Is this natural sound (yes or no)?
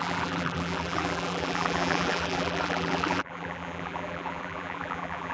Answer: no